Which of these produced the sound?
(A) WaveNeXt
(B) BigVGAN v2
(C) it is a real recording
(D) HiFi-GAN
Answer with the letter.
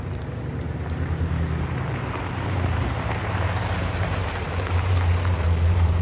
B